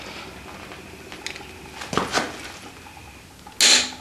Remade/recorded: recorded